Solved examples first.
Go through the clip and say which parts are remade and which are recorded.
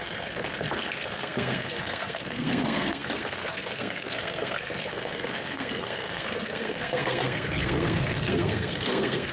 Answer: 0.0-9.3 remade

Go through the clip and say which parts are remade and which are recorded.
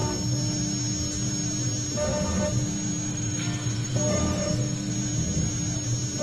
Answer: 0.0-3.1 recorded; 3.1-4.9 remade; 4.9-6.2 recorded